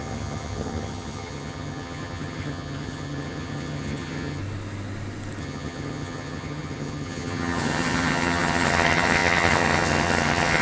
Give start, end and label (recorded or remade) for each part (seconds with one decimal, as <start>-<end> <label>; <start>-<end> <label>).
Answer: 0.0-4.4 remade; 4.4-5.4 recorded; 5.4-10.6 remade